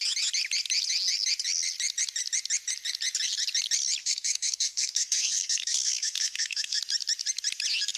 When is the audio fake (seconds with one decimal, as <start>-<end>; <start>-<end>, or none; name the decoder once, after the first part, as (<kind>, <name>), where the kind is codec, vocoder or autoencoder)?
4.0-6.8 (codec, SNAC)